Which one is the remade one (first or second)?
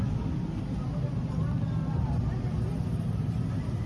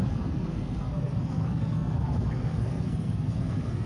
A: second